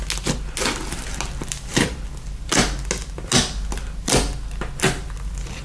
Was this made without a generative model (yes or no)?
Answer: yes